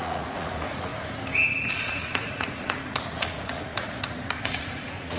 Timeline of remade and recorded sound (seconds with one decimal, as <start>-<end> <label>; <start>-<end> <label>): 0.0-0.9 remade; 0.9-1.7 recorded; 1.7-5.2 remade